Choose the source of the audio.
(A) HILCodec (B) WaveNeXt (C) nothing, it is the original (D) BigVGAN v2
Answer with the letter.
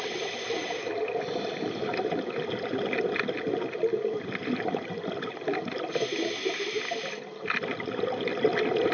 C